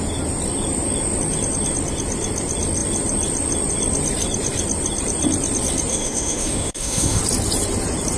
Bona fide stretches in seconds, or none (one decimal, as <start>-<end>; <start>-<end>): 0.0-5.9; 7.2-8.2